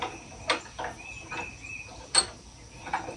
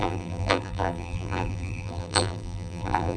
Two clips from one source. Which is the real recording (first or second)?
first